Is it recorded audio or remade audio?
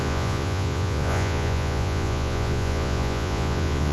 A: remade